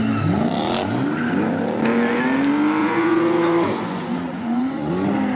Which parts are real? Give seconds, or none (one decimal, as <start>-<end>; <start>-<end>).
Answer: 0.0-2.8; 4.9-5.4